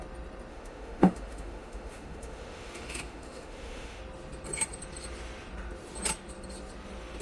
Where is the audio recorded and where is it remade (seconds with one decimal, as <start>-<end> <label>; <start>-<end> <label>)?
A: 0.0-0.5 recorded; 0.5-4.0 remade; 4.0-7.2 recorded